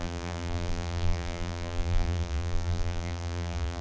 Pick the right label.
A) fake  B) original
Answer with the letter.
A